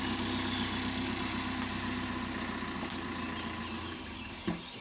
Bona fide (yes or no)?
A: yes